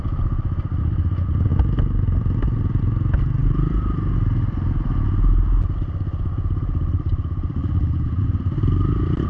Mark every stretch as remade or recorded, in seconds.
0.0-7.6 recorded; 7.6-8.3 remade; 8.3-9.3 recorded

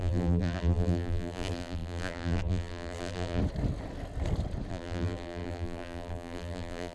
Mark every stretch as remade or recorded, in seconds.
0.0-3.4 remade; 3.4-4.7 recorded; 4.7-6.9 remade

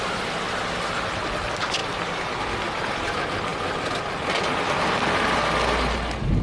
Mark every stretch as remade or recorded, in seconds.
0.0-6.4 recorded

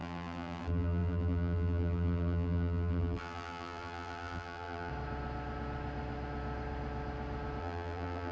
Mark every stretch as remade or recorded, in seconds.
0.0-4.9 remade; 4.9-7.6 recorded; 7.6-8.3 remade

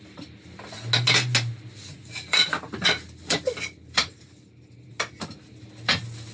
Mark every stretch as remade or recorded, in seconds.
0.0-1.9 recorded; 1.9-2.7 remade; 2.7-4.0 recorded; 4.0-4.9 remade; 4.9-6.3 recorded

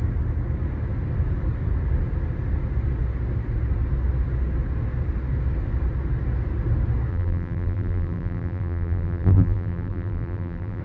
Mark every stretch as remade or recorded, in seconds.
0.0-7.1 recorded; 7.1-10.8 remade

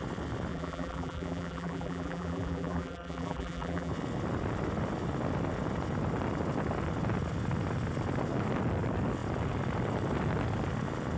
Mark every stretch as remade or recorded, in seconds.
0.0-0.5 recorded; 0.5-3.9 remade; 3.9-11.2 recorded

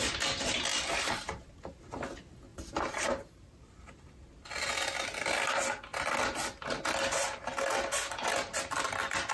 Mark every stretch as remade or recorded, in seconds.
0.0-0.7 recorded; 0.7-1.8 remade; 1.8-2.5 recorded; 2.5-4.1 remade; 4.1-9.3 recorded